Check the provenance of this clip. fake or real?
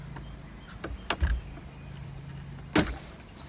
real